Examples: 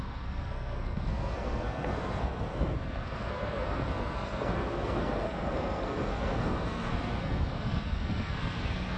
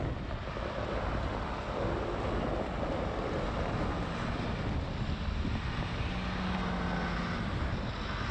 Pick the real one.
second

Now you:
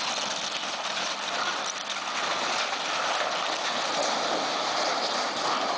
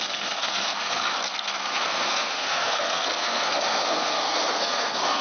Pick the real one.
first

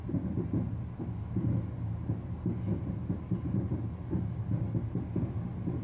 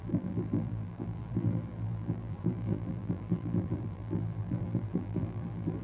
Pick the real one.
first